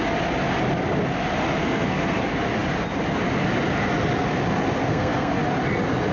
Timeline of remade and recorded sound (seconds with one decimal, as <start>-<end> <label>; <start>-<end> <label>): 0.0-1.6 recorded; 1.6-2.2 remade; 2.2-4.8 recorded; 4.8-5.4 remade; 5.4-6.1 recorded